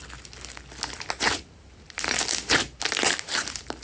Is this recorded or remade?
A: recorded